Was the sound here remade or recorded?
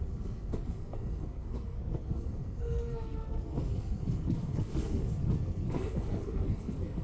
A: remade